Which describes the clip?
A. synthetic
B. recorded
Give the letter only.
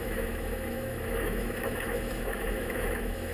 A